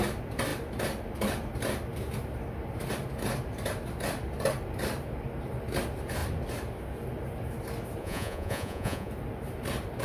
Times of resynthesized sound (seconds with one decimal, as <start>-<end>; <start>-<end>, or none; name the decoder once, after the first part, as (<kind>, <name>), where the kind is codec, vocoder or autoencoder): 8.0-9.1 (vocoder, Vocos)